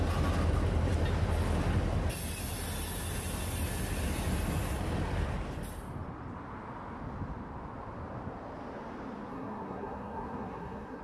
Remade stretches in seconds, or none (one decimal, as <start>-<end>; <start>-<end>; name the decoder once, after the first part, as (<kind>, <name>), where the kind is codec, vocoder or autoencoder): 9.3-11.0 (codec, SNAC)